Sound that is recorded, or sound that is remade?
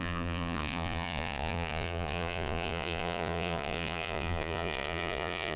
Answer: remade